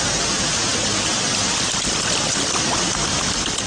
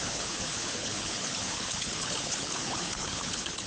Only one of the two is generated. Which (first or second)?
second